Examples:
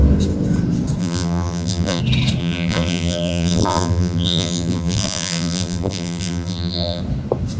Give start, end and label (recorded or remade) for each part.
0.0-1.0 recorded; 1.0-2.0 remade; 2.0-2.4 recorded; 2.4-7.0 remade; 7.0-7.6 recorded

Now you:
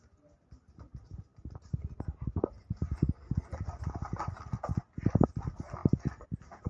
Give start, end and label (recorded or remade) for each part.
0.0-6.7 recorded

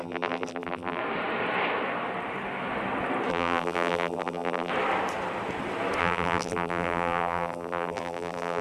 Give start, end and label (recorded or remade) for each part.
0.0-1.0 remade; 1.0-3.3 recorded; 3.3-4.7 remade; 4.7-6.0 recorded; 6.0-8.6 remade

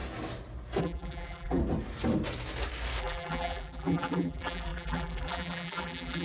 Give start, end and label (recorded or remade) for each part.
0.0-0.8 recorded; 0.8-1.6 remade; 1.6-3.0 recorded; 3.0-6.2 remade

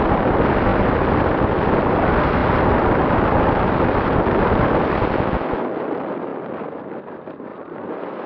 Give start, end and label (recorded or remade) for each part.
0.0-8.3 remade

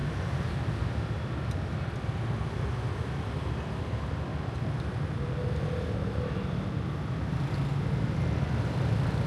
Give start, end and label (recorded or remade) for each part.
0.0-0.8 remade; 0.8-4.3 recorded; 4.3-5.4 remade; 5.4-9.3 recorded

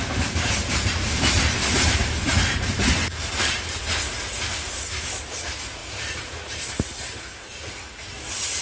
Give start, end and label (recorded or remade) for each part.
0.0-2.3 remade; 2.3-3.0 recorded; 3.0-3.8 remade; 3.8-5.8 recorded; 5.8-6.7 remade; 6.7-8.6 recorded

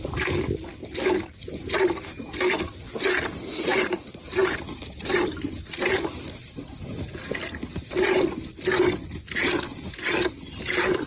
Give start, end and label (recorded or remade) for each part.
0.0-11.1 recorded